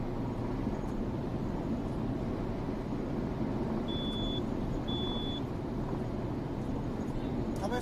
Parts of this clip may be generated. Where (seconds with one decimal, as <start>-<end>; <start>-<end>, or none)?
none